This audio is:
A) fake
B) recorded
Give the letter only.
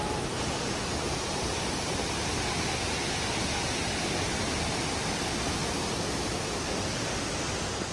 B